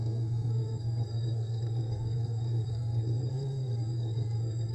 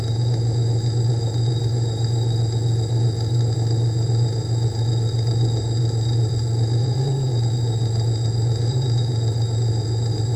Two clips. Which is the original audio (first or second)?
second